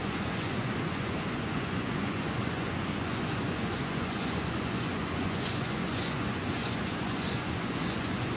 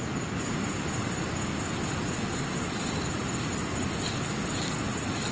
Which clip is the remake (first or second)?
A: first